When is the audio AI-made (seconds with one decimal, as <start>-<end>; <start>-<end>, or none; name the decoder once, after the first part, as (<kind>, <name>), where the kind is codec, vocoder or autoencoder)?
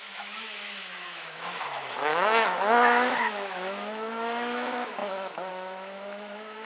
0.0-6.6 (autoencoder, DAC-VAE)